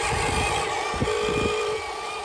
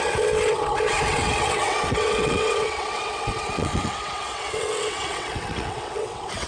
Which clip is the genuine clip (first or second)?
first